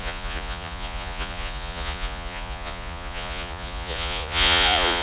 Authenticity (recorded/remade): remade